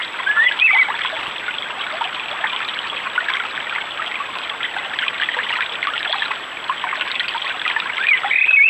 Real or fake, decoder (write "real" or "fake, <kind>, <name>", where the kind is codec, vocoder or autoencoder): real